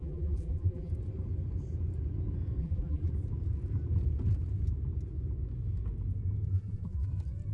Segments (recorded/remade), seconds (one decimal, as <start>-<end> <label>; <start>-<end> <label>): 0.0-0.9 remade; 0.9-2.6 recorded; 2.6-3.1 remade; 3.1-6.5 recorded; 6.5-7.1 remade; 7.1-7.5 recorded